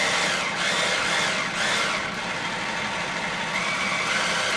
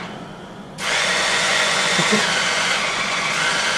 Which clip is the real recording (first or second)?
first